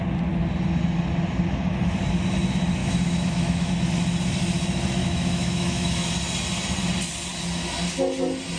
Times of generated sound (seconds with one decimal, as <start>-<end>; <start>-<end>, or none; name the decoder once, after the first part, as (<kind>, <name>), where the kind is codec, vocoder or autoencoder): 2.8-3.7 (autoencoder, DAC-VAE); 5.0-6.1